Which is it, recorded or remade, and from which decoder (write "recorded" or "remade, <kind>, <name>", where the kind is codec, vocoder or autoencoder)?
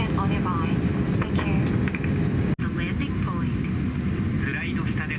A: recorded